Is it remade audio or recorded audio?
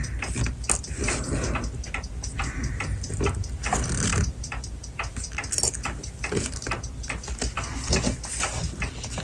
recorded